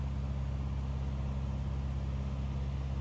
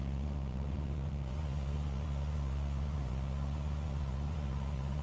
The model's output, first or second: second